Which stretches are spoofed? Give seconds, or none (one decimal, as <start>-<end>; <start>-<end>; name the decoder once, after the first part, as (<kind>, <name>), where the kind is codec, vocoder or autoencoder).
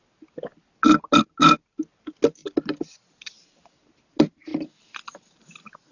none